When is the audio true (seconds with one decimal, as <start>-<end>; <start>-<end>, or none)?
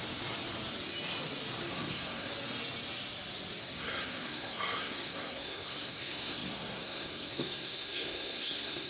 0.0-1.7; 2.3-3.6